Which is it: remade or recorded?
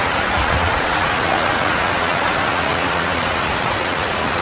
remade